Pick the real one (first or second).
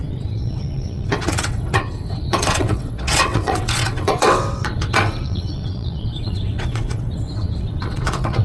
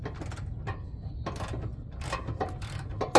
second